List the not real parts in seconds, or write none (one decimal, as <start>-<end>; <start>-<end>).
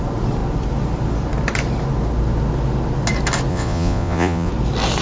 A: 3.5-4.5